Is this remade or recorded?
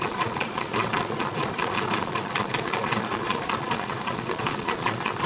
remade